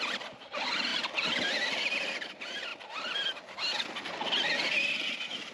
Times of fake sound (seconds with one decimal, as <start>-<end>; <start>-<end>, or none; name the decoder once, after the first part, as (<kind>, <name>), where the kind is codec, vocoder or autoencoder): none